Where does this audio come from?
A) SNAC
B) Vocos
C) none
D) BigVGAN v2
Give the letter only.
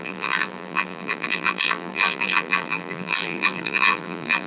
D